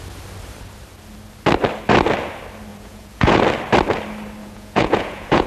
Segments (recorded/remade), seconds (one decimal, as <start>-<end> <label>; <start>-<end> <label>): 0.0-2.7 recorded; 2.7-3.4 remade; 3.4-4.4 recorded; 4.4-5.5 remade

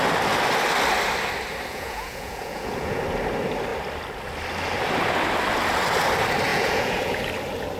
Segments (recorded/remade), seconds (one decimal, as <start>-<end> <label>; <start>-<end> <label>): 0.0-1.7 recorded; 1.7-3.0 remade; 3.0-6.5 recorded; 6.5-7.2 remade; 7.2-7.8 recorded

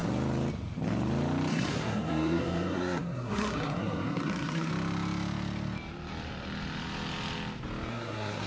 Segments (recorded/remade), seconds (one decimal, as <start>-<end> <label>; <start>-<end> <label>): 0.0-1.5 recorded; 1.5-4.7 remade; 4.7-7.9 recorded; 7.9-8.5 remade

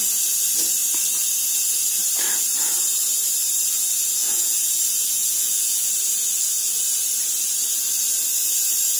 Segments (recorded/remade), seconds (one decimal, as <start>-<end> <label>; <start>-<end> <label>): 0.0-4.2 recorded; 4.2-4.8 remade; 4.8-5.2 recorded; 5.2-5.9 remade; 5.9-9.0 recorded

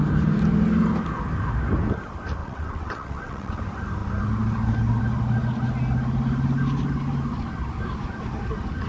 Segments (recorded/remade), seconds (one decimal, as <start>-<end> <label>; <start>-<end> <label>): 0.0-2.4 recorded; 2.4-3.6 remade; 3.6-8.9 recorded

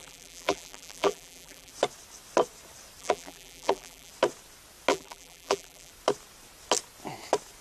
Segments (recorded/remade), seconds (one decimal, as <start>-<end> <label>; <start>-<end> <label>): 0.0-1.7 remade; 1.7-3.0 recorded; 3.0-4.1 remade; 4.1-4.9 recorded; 4.9-5.9 remade; 5.9-7.6 recorded